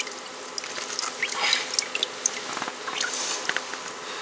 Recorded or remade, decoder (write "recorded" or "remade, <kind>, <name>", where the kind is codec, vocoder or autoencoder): recorded